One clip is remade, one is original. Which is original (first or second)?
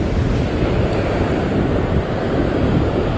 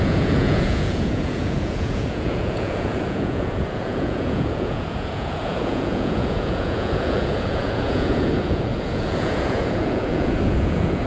first